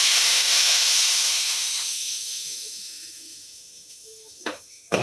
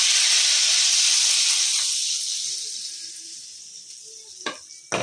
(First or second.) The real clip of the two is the second